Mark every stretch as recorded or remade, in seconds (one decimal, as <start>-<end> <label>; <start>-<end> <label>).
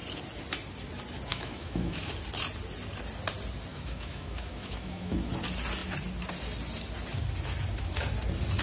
0.0-1.3 recorded; 1.3-2.1 remade; 2.1-3.7 recorded; 3.7-5.3 remade; 5.3-8.6 recorded